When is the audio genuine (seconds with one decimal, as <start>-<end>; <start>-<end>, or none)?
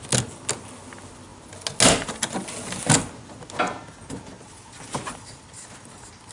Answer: 0.0-6.3